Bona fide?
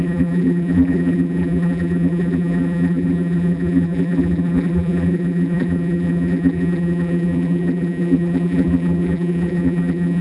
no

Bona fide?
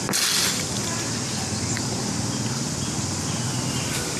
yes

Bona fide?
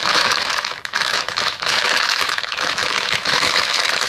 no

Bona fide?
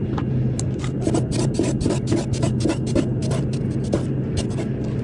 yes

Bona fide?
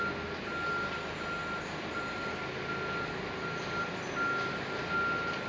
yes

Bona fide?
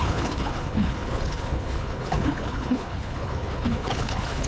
no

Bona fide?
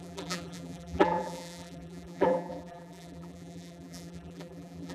no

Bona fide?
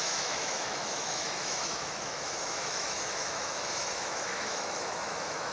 no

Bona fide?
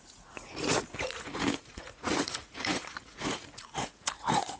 no